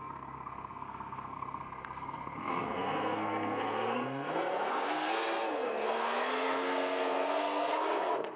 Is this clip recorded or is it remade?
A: remade